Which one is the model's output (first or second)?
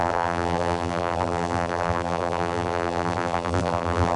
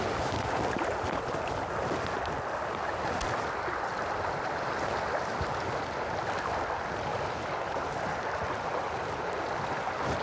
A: first